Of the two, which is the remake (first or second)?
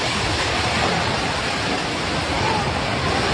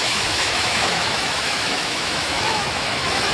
second